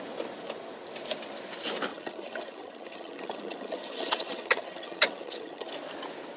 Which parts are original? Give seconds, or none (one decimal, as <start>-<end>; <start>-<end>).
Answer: 0.0-1.9; 5.7-6.4